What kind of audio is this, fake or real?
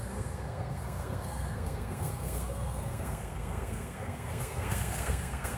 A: fake